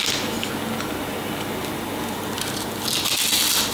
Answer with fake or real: real